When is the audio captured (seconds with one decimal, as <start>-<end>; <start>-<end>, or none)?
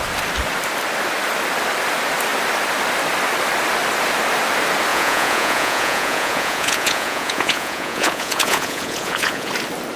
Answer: 0.0-4.9; 9.5-10.0